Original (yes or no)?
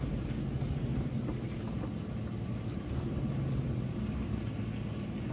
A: yes